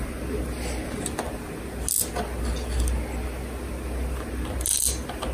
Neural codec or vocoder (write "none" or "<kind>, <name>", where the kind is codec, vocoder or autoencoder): none